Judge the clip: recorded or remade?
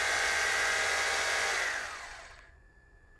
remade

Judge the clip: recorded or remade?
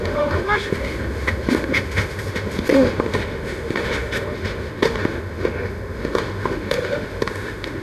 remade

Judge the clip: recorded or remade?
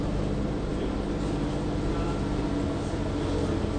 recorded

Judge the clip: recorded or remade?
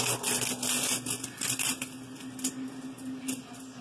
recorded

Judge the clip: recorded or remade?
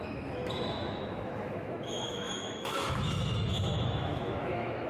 remade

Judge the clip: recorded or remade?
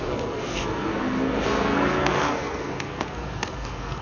remade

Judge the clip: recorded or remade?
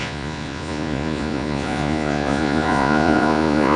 remade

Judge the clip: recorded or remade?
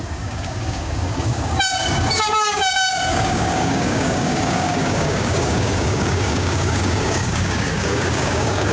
remade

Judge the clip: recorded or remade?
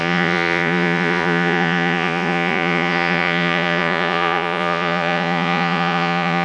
remade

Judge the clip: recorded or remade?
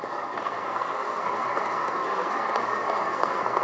remade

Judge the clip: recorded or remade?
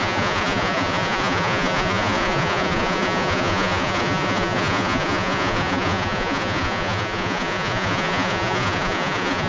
remade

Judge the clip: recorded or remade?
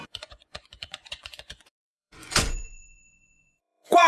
remade